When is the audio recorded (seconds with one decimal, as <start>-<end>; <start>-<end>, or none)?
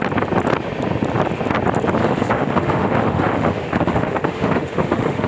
0.0-2.0